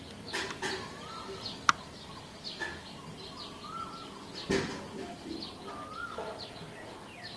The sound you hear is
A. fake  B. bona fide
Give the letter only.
B